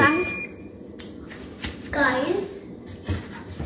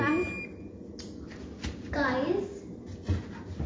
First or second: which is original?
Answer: second